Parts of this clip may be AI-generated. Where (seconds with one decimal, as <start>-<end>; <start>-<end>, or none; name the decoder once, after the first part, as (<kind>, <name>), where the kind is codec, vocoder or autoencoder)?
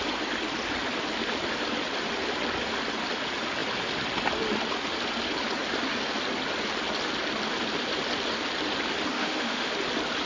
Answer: 9.1-9.7 (autoencoder, DAC-VAE)